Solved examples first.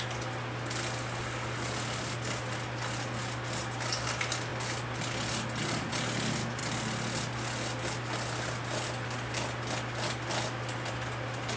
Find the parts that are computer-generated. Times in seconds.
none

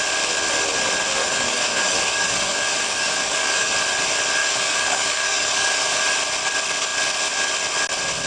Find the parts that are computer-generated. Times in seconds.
1.2-3.7 (codec, DAC); 4.4-6.0

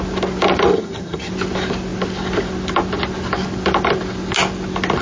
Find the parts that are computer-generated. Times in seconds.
0.7-1.3 (vocoder, HiFi-GAN)